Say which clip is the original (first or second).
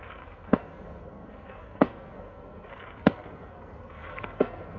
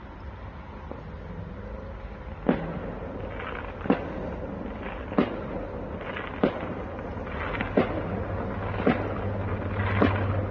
second